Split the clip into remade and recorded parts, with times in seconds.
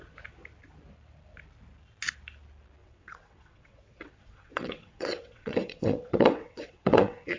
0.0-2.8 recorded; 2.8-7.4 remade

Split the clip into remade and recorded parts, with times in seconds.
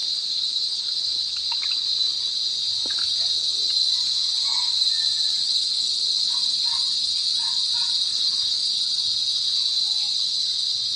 0.0-1.1 remade; 1.1-5.4 recorded; 5.4-6.3 remade; 6.3-8.1 recorded; 8.1-8.8 remade; 8.8-11.0 recorded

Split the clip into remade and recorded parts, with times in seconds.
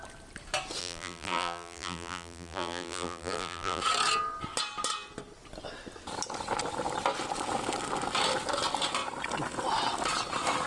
0.0-0.8 recorded; 0.8-3.8 remade; 3.8-10.7 recorded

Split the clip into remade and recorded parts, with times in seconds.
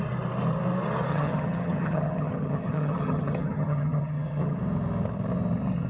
0.0-1.1 recorded; 1.1-4.6 remade; 4.6-5.9 recorded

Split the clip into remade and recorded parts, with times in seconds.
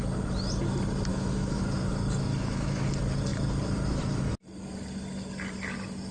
0.0-1.1 recorded; 1.1-1.6 remade; 1.6-2.3 recorded; 2.3-2.9 remade; 2.9-6.1 recorded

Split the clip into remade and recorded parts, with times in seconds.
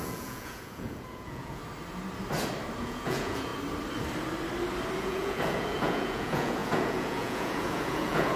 0.0-1.6 remade; 1.6-2.8 recorded; 2.8-3.5 remade; 3.5-5.0 recorded; 5.0-8.4 remade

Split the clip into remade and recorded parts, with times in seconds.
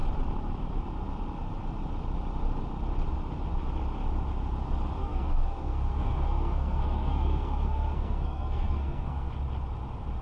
0.0-5.0 recorded; 5.0-9.3 remade; 9.3-10.2 recorded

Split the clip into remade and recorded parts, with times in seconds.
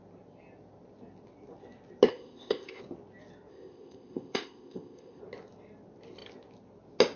0.0-2.1 recorded; 2.1-2.8 remade; 2.8-3.5 recorded; 3.5-5.2 remade; 5.2-7.2 recorded